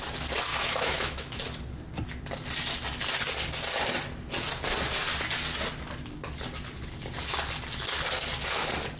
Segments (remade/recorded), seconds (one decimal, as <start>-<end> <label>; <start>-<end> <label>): 0.0-0.5 recorded; 0.5-1.4 remade; 1.4-9.0 recorded